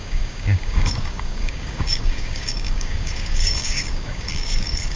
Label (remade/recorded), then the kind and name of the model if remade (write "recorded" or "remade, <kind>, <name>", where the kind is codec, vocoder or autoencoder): remade, codec, DAC